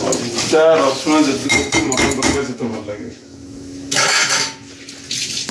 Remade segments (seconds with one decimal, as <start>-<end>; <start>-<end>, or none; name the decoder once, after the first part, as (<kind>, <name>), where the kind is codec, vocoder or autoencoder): 1.4-4.7 (autoencoder, DAC-VAE)